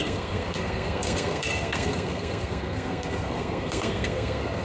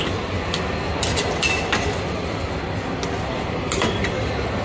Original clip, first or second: second